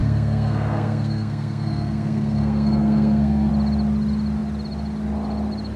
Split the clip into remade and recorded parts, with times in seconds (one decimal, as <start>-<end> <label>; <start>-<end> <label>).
0.0-3.5 remade; 3.5-5.8 recorded